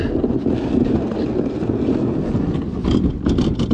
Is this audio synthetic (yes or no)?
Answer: no